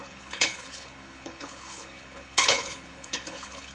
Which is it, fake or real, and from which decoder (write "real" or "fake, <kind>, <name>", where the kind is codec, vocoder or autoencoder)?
fake, codec, HILCodec